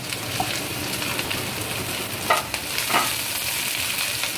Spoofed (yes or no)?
no